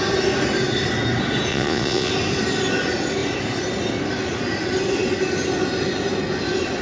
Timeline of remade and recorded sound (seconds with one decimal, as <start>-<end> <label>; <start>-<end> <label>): 0.0-1.5 recorded; 1.5-2.1 remade; 2.1-6.8 recorded